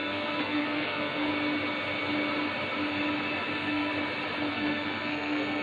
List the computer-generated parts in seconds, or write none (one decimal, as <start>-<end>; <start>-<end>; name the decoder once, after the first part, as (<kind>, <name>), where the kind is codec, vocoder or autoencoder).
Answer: 0.0-1.3 (codec, SNAC); 3.5-3.9; 4.5-5.6